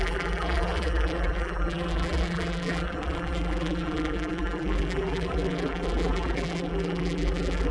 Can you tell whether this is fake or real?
fake